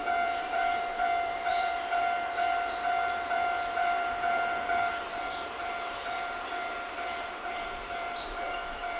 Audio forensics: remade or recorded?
remade